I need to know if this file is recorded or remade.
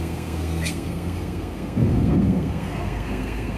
remade